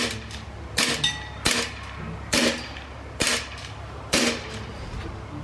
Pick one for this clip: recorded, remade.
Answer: remade